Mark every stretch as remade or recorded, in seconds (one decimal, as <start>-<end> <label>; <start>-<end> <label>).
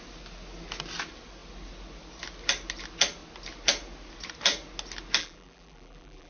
0.0-5.2 recorded; 5.2-6.3 remade